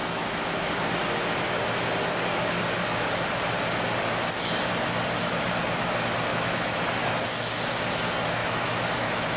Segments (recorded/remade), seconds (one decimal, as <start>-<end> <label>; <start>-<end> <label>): 0.0-0.7 remade; 0.7-6.3 recorded; 6.3-6.8 remade; 6.8-8.4 recorded; 8.4-9.4 remade